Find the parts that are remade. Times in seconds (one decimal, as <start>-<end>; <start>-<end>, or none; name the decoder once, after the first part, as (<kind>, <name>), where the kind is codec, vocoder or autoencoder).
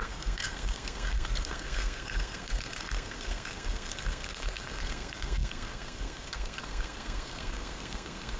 0.0-8.4 (codec, SNAC)